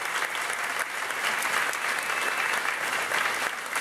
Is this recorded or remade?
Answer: recorded